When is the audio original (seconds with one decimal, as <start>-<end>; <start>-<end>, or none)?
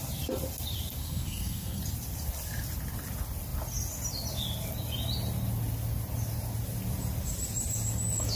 0.0-1.0; 1.8-8.4